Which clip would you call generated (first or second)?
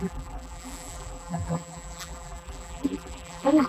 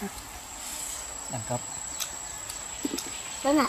first